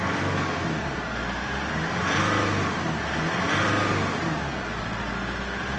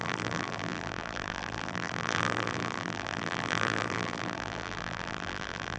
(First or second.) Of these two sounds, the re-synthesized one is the second